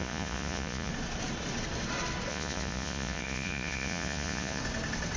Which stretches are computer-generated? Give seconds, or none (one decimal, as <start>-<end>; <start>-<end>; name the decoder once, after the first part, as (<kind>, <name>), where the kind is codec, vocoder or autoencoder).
0.0-0.9 (vocoder, Vocos); 2.3-4.6